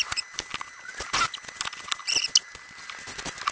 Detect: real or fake real